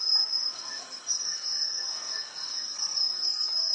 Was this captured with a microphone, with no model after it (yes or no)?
no